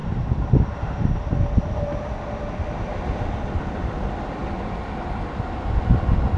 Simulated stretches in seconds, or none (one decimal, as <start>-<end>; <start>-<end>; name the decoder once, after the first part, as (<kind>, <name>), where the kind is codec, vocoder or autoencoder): none